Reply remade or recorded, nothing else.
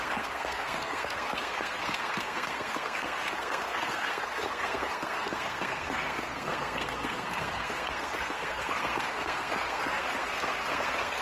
remade